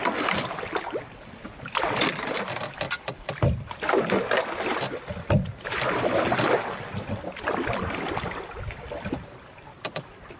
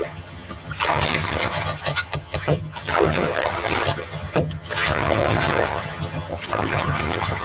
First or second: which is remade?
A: second